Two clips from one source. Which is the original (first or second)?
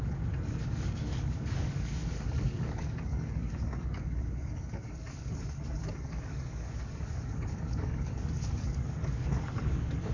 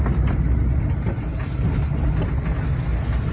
second